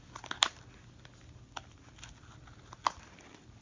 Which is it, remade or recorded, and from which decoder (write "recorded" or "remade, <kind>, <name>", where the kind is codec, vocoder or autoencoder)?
recorded